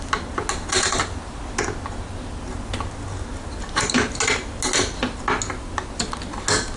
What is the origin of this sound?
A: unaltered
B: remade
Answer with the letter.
A